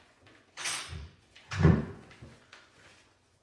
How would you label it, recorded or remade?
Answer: remade